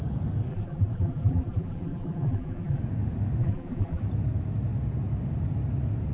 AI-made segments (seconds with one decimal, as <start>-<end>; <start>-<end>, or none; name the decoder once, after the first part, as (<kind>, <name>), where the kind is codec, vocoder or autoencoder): 0.5-2.8 (vocoder, BigVGAN v2); 3.4-4.0